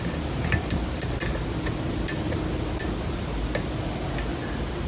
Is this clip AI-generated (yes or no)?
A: no